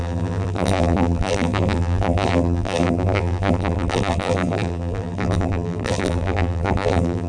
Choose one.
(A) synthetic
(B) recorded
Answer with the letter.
A